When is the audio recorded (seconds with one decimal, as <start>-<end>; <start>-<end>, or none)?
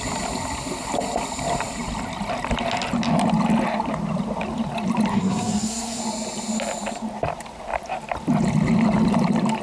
0.0-5.1; 6.0-9.6